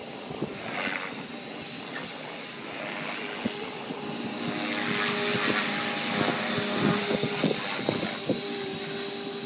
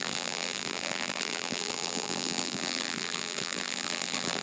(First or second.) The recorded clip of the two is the first